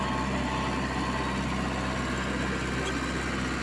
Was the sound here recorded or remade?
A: recorded